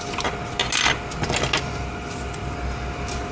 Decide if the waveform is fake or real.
real